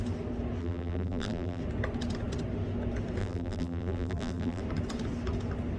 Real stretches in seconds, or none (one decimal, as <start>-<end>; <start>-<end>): 0.0-0.6; 1.6-3.2; 4.6-5.8